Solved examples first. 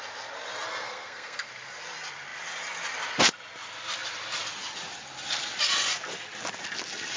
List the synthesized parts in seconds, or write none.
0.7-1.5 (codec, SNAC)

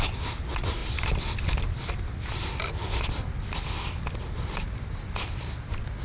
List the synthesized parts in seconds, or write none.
none

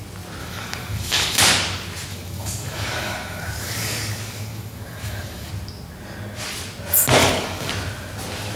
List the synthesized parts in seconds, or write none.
0.4-1.4 (codec, DAC); 2.1-5.5; 7.2-7.7

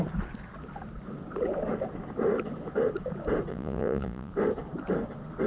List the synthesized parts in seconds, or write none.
3.5-4.3 (vocoder, Vocos)

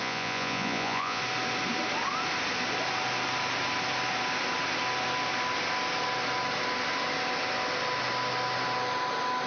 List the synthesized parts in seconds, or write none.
0.0-1.2 (vocoder, Vocos)

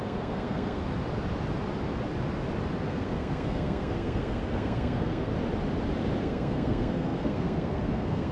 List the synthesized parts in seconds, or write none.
0.0-0.8 (codec, SNAC); 2.8-5.3; 6.2-8.3

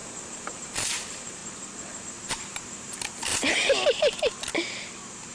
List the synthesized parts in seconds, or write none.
0.0-1.4 (vocoder, BigVGAN v2); 2.0-3.3

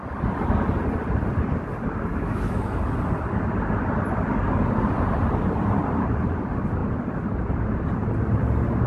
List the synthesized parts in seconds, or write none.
2.1-2.8 (autoencoder, DAC-VAE)